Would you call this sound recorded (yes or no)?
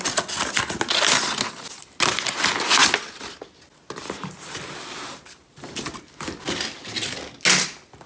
yes